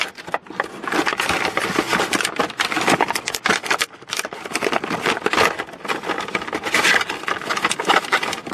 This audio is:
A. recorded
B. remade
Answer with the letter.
A